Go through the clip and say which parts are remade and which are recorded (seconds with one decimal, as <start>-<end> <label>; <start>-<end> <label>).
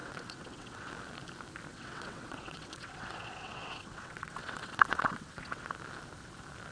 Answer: 0.0-0.9 remade; 0.9-1.7 recorded; 1.7-5.7 remade; 5.7-6.7 recorded